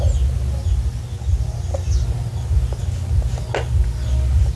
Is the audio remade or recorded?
recorded